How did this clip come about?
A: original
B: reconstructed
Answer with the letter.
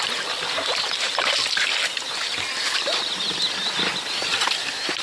A